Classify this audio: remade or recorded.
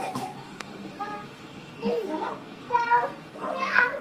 remade